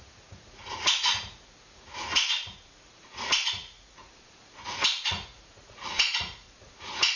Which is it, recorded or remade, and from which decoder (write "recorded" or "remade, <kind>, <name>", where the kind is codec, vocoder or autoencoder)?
remade, vocoder, Vocos